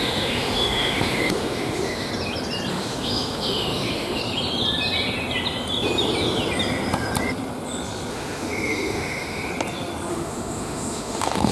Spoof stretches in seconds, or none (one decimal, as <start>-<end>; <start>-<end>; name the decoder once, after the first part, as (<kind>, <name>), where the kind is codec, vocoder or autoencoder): 0.0-2.1 (autoencoder, DAC-VAE); 2.7-4.2; 8.1-9.5; 10.1-11.5